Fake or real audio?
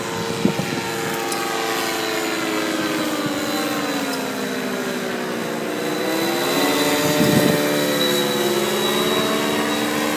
real